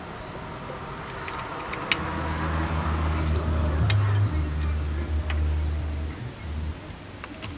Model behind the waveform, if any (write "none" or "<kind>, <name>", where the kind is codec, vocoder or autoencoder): none